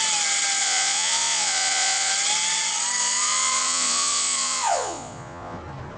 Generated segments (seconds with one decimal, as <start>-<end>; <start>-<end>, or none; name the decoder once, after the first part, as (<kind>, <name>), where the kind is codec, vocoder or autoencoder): 0.6-2.1 (vocoder, Vocos); 3.0-5.6